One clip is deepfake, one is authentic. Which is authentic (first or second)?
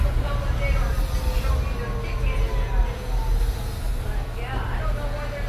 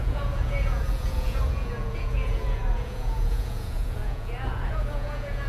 first